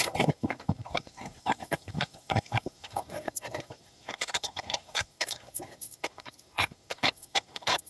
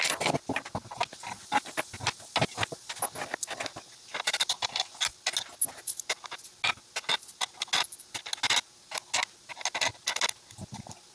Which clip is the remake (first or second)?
first